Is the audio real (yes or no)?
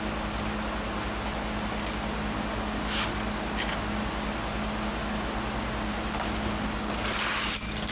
yes